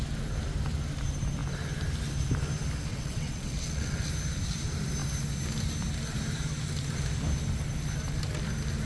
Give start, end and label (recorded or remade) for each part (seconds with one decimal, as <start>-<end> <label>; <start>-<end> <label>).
0.0-2.9 recorded; 2.9-4.1 remade; 4.1-8.9 recorded

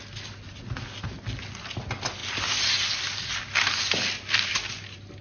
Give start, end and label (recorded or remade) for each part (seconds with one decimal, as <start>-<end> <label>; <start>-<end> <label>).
0.0-5.2 recorded

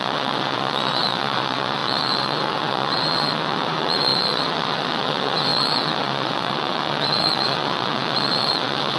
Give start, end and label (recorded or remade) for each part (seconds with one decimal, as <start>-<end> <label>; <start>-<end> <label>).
0.0-9.0 remade

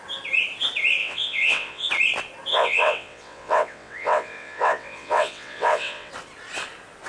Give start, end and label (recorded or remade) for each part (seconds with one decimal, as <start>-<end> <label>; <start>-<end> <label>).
0.0-1.0 recorded; 1.0-1.9 remade; 1.9-2.5 recorded; 2.5-6.1 remade; 6.1-7.1 recorded

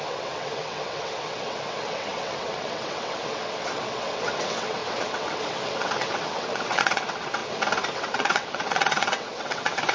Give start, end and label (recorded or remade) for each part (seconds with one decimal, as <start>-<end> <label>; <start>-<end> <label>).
0.0-7.4 remade; 7.4-7.9 recorded; 7.9-9.9 remade

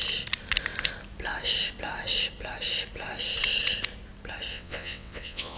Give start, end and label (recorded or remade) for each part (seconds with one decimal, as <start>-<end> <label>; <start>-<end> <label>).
0.0-4.5 recorded; 4.5-5.6 remade

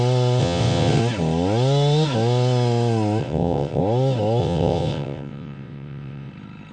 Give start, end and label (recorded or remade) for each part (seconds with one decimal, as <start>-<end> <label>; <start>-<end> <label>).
0.0-0.4 recorded; 0.4-1.0 remade; 1.0-3.2 recorded; 3.2-3.8 remade; 3.8-4.4 recorded; 4.4-6.3 remade; 6.3-6.7 recorded

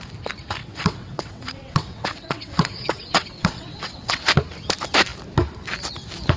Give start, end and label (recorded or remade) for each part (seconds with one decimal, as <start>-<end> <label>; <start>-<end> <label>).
0.0-0.6 recorded; 0.6-4.3 remade; 4.3-6.4 recorded